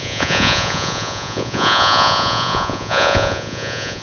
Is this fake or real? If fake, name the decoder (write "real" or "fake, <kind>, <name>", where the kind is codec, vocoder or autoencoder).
fake, vocoder, Vocos